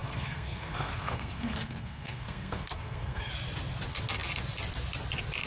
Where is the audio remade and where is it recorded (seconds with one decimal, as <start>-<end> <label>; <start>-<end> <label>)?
0.0-3.3 remade; 3.3-5.5 recorded

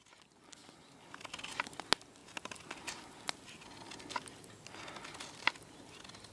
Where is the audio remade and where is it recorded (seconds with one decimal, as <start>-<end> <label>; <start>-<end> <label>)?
0.0-6.3 recorded

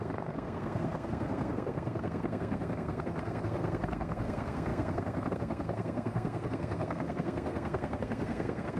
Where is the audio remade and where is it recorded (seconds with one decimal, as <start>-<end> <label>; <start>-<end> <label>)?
0.0-8.8 remade

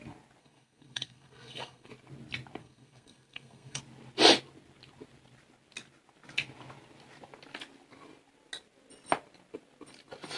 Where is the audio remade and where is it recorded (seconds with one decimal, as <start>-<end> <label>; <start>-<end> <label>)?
0.0-0.4 recorded; 0.4-1.9 remade; 1.9-2.6 recorded; 2.6-3.8 remade; 3.8-10.4 recorded

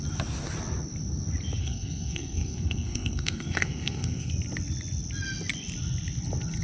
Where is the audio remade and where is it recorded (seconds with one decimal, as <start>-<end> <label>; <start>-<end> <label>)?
0.0-1.6 recorded; 1.6-4.3 remade; 4.3-6.6 recorded

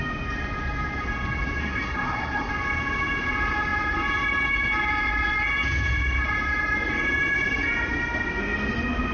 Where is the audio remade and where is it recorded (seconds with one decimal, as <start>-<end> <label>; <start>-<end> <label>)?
0.0-1.6 recorded; 1.6-2.5 remade; 2.5-9.1 recorded

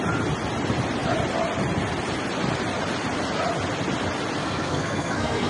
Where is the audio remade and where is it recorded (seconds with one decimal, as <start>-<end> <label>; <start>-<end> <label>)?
0.0-4.4 recorded; 4.4-5.5 remade

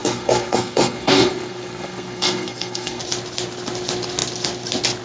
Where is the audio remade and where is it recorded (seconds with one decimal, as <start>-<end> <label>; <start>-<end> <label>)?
0.0-3.0 remade; 3.0-5.0 recorded